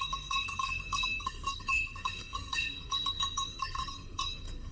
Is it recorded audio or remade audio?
remade